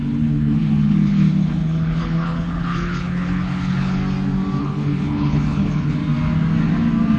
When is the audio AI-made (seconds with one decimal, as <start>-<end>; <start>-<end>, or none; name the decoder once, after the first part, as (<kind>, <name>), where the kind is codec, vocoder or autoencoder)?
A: 0.0-4.0 (codec, HILCodec); 4.6-6.0